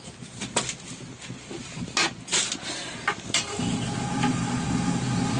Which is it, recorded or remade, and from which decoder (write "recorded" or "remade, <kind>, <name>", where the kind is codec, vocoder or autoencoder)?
recorded